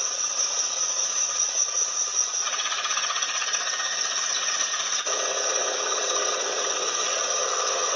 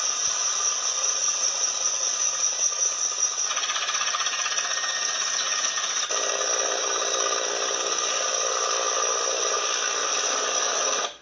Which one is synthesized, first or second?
first